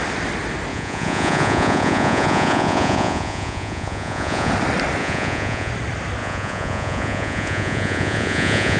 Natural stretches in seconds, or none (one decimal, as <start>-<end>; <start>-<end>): 0.0-0.7; 4.5-5.0; 5.7-6.2